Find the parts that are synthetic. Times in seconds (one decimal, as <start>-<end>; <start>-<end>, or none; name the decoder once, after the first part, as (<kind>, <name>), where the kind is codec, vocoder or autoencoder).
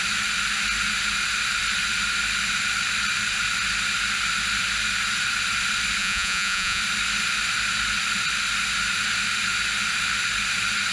6.0-6.8 (vocoder, Vocos)